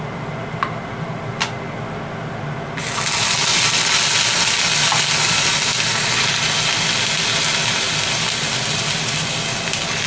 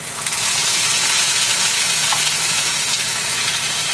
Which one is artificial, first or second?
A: second